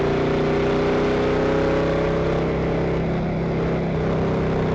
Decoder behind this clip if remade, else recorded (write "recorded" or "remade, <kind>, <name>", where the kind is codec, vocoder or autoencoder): recorded